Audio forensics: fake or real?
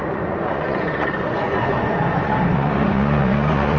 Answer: fake